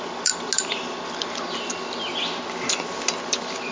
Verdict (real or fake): real